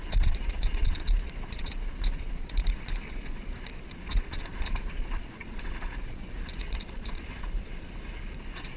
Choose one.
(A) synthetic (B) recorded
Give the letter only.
A